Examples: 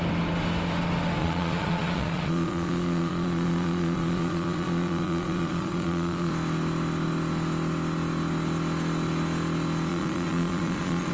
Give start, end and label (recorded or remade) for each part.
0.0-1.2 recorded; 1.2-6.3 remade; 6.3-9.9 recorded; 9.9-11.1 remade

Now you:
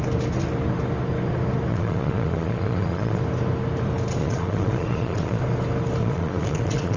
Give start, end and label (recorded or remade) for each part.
0.0-1.7 recorded; 1.7-3.2 remade; 3.2-4.2 recorded; 4.2-5.4 remade; 5.4-6.0 recorded; 6.0-7.0 remade

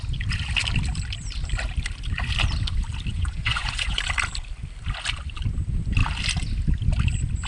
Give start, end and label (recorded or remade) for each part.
0.0-3.1 recorded; 3.1-4.0 remade; 4.0-7.5 recorded